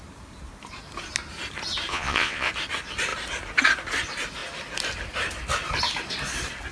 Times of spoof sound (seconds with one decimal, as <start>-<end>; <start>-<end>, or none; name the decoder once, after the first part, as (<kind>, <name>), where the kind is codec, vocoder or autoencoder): 1.9-2.5 (vocoder, Vocos)